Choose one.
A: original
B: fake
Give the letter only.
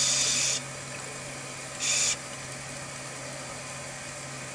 A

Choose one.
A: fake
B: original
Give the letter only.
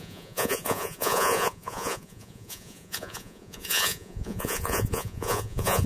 A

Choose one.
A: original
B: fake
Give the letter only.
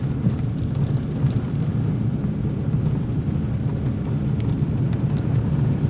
A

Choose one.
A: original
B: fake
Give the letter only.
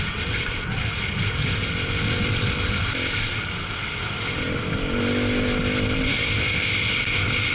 A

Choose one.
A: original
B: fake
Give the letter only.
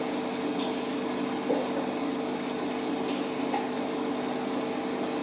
A